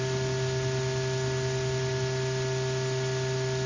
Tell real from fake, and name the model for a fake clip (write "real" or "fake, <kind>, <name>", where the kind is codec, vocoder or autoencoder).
real